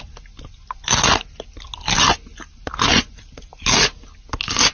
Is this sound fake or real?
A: real